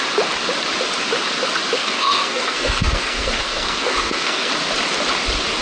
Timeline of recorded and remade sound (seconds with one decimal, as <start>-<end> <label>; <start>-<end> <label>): 0.0-1.8 recorded; 1.8-4.5 remade; 4.5-5.6 recorded